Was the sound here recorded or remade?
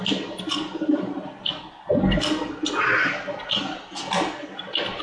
recorded